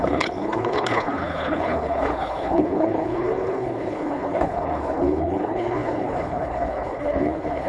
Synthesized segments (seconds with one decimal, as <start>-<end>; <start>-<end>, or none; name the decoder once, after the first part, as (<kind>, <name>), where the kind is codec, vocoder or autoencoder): 0.0-7.7 (codec, HILCodec)

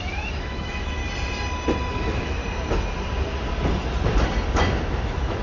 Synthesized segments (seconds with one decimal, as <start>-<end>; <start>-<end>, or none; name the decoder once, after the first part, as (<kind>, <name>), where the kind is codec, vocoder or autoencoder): 0.0-1.0 (autoencoder, DAC-VAE); 1.9-2.4; 4.9-5.4